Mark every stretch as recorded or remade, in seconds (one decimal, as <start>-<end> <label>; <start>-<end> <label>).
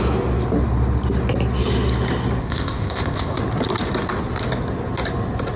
0.0-2.4 recorded; 2.4-3.4 remade; 3.4-5.6 recorded